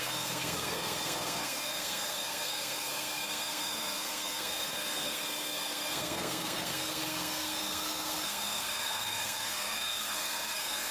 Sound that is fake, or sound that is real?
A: fake